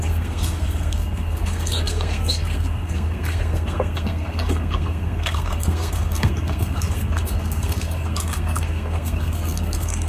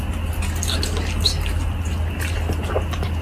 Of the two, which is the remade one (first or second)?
first